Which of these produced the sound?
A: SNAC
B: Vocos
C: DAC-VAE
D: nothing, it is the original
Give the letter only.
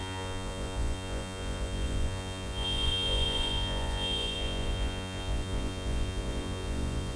B